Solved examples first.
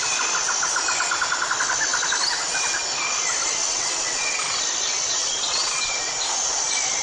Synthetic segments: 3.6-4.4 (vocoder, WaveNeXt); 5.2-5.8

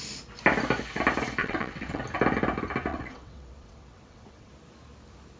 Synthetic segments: 1.4-2.0 (vocoder, WaveNeXt); 2.9-4.5